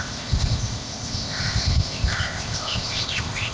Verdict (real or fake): fake